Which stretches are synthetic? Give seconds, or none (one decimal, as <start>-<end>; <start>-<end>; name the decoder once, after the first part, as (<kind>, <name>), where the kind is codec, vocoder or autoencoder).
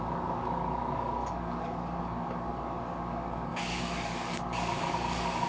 0.0-5.5 (codec, DAC)